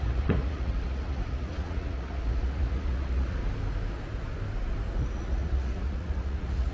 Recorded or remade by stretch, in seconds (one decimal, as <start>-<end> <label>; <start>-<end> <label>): 0.0-3.4 remade; 3.4-5.0 recorded; 5.0-6.7 remade